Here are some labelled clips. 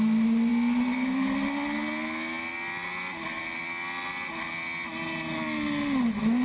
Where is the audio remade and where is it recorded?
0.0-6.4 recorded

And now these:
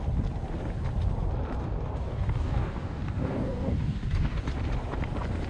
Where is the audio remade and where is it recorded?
0.0-1.6 recorded; 1.6-4.4 remade; 4.4-5.5 recorded

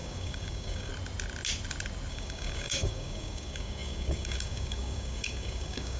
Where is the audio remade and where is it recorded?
0.0-0.9 remade; 0.9-2.1 recorded; 2.1-6.0 remade

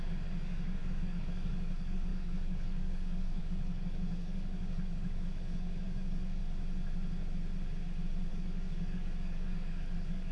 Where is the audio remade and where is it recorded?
0.0-6.4 remade; 6.4-8.3 recorded; 8.3-10.3 remade

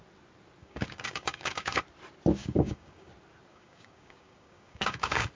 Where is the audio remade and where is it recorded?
0.0-0.6 recorded; 0.6-1.8 remade; 1.8-2.4 recorded; 2.4-3.1 remade; 3.1-3.5 recorded; 3.5-5.3 remade